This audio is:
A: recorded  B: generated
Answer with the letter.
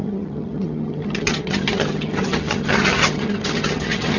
B